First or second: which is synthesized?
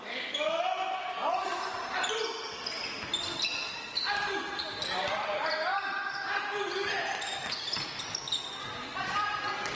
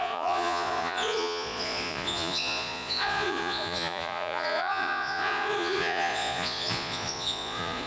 second